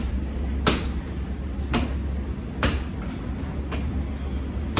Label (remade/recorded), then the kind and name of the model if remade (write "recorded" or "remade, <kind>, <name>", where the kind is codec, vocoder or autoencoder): recorded